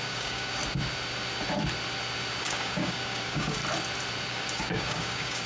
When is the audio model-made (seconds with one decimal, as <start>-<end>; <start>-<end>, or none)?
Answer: 0.0-0.6; 2.4-3.6; 4.3-5.5